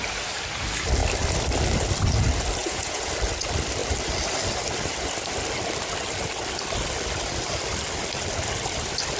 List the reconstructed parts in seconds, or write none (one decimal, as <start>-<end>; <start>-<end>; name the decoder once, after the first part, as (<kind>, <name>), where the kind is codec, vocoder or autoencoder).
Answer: 2.6-3.1 (vocoder, Vocos)